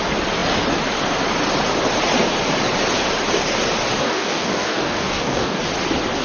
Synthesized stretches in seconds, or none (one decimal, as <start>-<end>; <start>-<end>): 4.0-5.6

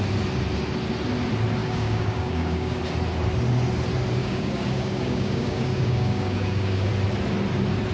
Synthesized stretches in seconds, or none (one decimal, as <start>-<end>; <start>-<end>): 1.6-2.8; 4.2-6.9

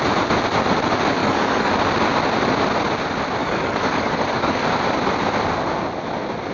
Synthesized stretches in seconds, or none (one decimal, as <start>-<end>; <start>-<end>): 1.2-1.7; 3.4-4.6

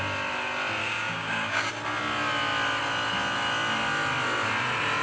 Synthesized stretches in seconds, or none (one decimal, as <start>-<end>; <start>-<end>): 0.8-1.7

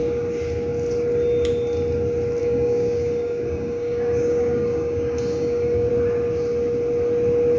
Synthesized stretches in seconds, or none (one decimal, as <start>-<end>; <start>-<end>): 2.4-5.9

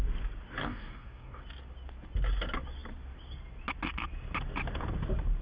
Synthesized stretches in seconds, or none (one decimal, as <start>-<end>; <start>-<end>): 0.6-1.4

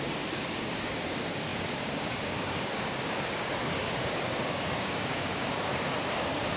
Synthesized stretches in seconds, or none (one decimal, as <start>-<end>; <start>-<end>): 0.0-6.6

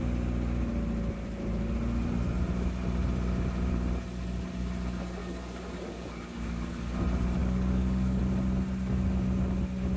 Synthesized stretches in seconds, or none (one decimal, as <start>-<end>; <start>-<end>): 5.2-6.7; 7.4-8.2